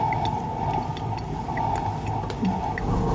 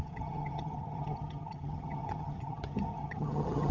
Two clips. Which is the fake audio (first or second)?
second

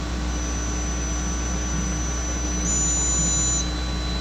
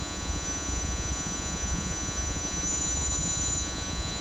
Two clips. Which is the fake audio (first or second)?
second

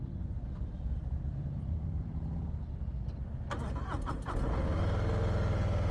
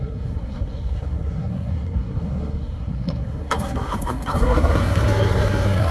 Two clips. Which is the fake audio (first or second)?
second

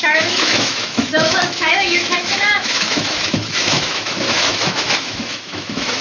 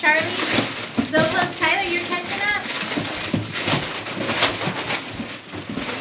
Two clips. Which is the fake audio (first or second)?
first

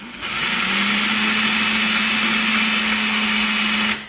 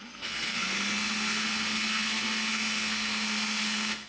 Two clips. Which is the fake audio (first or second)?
second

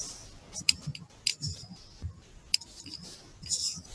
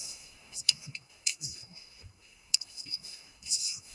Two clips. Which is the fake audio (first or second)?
second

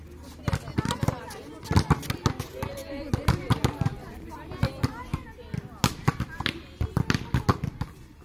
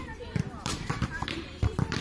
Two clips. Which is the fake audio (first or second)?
second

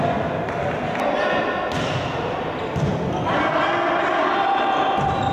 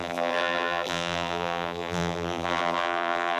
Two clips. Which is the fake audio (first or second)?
second